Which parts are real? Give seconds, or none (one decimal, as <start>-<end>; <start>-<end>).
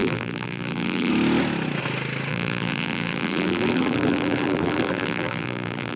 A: 1.1-2.3